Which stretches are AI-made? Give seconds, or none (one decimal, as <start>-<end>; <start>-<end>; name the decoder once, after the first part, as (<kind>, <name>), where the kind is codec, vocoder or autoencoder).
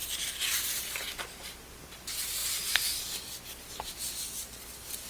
none